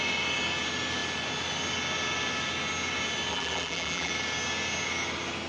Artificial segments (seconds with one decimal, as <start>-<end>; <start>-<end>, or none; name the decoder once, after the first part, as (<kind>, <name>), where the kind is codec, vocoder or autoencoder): 3.3-4.1 (vocoder, BigVGAN v2)